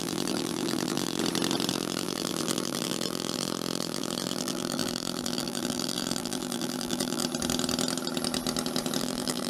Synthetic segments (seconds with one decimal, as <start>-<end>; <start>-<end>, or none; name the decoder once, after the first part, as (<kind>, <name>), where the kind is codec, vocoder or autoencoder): 0.0-1.2 (vocoder, BigVGAN v2); 1.7-7.2; 9.0-9.5